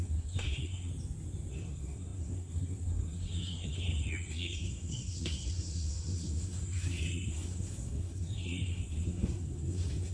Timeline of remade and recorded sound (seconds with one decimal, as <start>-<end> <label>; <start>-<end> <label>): 0.0-0.9 remade; 0.9-1.5 recorded; 1.5-10.1 remade